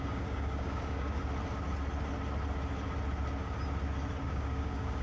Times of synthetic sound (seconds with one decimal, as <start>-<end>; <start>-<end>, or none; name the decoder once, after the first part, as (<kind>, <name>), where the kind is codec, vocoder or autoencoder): 0.0-1.2 (codec, DAC); 4.2-5.0